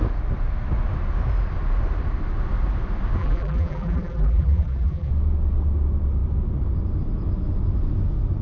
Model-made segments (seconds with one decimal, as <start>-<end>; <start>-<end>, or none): 3.2-5.1